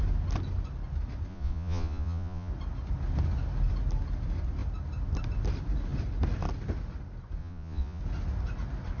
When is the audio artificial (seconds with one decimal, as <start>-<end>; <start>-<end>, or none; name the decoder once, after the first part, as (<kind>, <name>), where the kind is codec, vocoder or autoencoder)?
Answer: 1.3-2.5 (vocoder, Vocos); 7.4-8.0